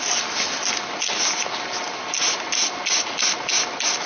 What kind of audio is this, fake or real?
real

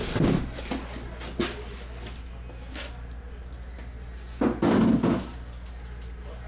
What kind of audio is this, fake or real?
real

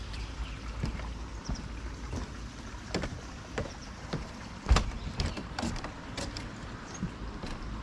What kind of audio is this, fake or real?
real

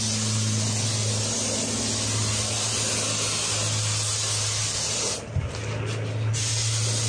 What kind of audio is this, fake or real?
real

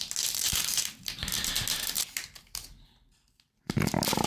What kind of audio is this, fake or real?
real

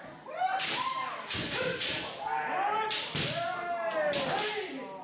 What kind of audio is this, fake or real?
real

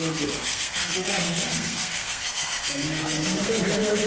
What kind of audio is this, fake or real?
fake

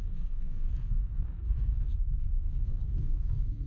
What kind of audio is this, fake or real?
fake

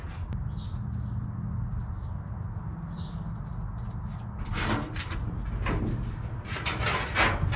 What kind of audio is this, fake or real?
real